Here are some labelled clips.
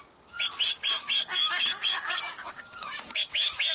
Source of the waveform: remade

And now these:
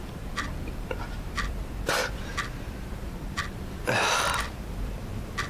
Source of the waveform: remade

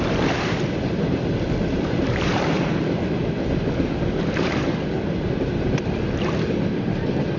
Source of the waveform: recorded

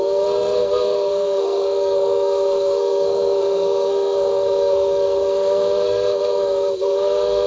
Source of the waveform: remade